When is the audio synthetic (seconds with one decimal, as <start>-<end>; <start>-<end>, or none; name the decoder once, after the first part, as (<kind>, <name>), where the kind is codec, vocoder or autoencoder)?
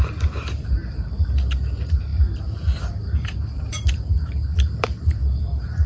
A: 0.0-5.9 (vocoder, BigVGAN v2)